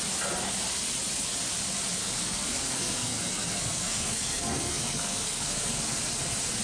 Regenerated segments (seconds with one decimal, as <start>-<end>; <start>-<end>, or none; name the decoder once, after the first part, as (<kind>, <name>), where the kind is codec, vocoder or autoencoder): 2.0-6.0 (codec, SNAC)